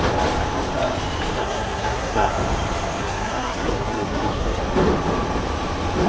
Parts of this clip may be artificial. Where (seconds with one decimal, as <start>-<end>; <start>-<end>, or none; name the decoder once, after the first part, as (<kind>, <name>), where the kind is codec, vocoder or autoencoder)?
1.4-2.3 (codec, SNAC); 3.0-4.6